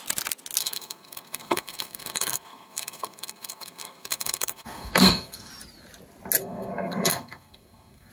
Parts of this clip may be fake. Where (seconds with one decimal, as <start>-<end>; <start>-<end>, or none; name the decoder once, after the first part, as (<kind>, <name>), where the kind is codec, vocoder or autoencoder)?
0.6-5.5 (codec, SNAC); 6.4-8.1